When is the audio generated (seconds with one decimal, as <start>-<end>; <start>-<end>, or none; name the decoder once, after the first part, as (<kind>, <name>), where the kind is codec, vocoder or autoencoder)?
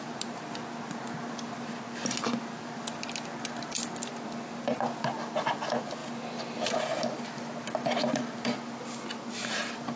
none